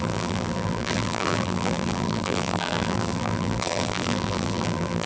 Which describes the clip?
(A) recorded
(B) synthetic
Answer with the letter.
B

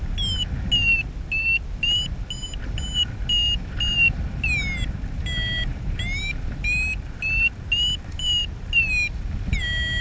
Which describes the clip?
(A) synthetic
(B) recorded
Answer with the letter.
B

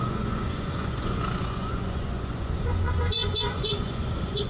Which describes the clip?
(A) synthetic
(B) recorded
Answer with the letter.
A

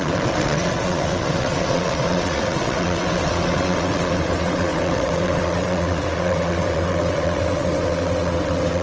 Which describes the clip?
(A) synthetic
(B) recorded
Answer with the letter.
A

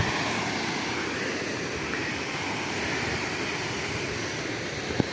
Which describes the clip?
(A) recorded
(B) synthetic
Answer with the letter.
A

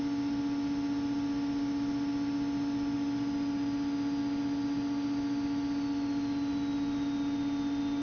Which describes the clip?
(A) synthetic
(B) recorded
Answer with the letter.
B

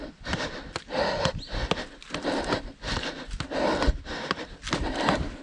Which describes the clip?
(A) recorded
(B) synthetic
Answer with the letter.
A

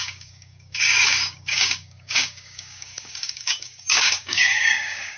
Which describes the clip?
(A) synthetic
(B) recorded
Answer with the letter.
A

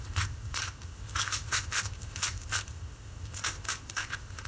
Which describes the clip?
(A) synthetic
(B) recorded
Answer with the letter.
A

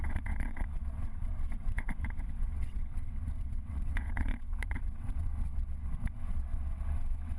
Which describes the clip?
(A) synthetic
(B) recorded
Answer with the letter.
A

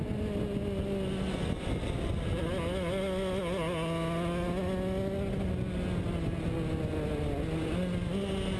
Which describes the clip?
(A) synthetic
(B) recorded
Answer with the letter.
B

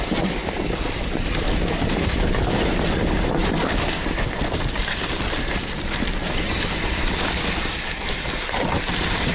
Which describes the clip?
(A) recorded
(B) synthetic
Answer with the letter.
A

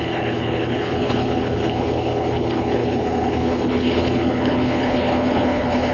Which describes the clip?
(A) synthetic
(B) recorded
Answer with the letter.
A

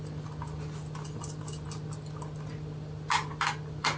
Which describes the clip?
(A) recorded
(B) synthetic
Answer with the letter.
A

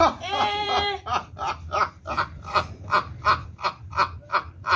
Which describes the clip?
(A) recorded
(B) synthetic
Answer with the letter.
B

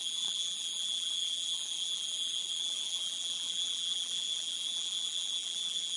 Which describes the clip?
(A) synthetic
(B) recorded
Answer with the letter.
A